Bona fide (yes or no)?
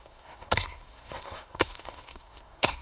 no